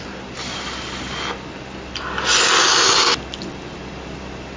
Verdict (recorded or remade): recorded